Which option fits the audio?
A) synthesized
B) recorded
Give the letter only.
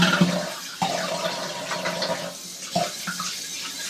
B